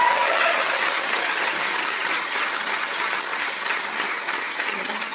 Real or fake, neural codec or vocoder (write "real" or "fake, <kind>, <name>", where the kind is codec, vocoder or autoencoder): fake, vocoder, HiFi-GAN